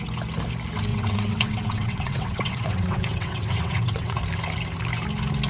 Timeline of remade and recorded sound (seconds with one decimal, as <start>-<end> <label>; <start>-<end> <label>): 0.0-0.9 recorded; 0.9-4.2 remade; 4.2-5.5 recorded